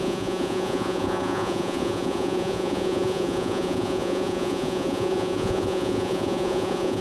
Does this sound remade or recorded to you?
remade